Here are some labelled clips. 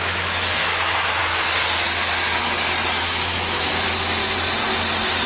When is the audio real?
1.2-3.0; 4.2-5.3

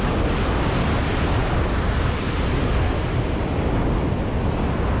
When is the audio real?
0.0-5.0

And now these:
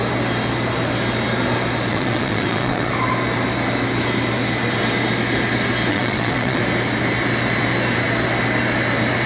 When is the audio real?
0.0-1.9; 2.9-5.9; 6.6-9.3